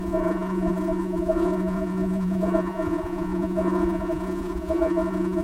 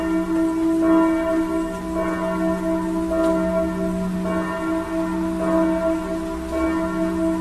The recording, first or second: second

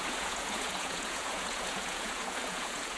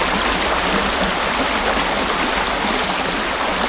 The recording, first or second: second